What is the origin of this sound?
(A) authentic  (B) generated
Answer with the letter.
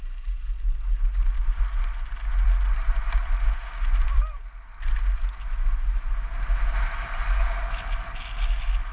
A